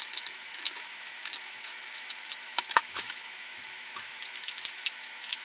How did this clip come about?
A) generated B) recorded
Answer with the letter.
A